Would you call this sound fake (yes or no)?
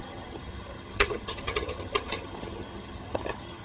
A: yes